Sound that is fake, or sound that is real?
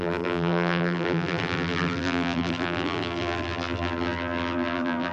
fake